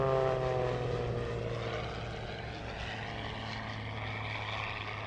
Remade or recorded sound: recorded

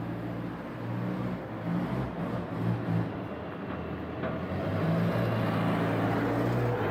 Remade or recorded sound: recorded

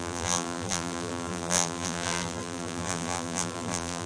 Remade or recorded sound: remade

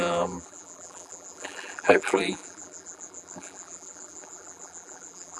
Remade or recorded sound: remade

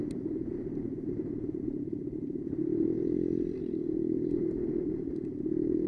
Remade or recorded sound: remade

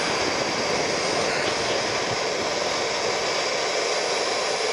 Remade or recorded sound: recorded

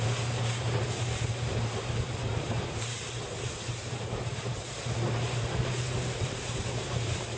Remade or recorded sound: remade